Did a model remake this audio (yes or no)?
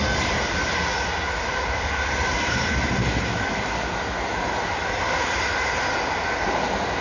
no